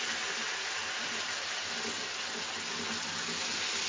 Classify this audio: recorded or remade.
recorded